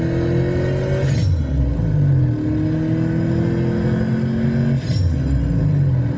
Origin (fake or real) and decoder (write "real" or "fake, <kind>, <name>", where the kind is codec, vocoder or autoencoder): real